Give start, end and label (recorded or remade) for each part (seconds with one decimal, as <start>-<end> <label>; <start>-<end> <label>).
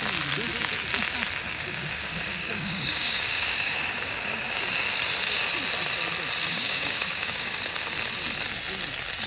0.0-1.5 recorded; 1.5-4.6 remade; 4.6-6.5 recorded; 6.5-7.6 remade; 7.6-9.3 recorded